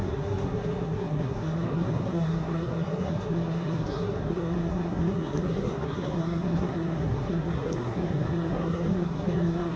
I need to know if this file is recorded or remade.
remade